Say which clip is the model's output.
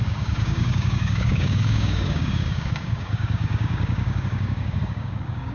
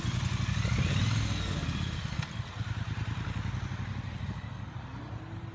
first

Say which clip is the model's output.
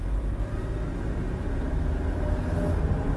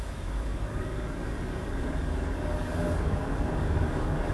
second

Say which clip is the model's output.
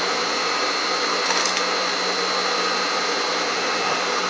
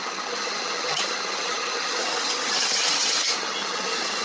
second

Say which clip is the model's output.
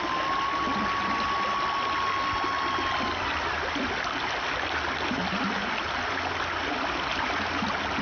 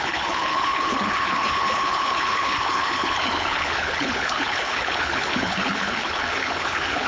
second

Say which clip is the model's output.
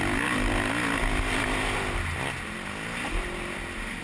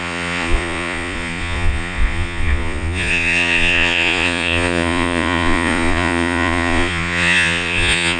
second